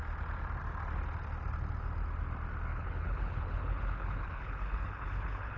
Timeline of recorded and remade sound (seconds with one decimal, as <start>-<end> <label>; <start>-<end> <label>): 0.0-2.7 recorded; 2.7-5.6 remade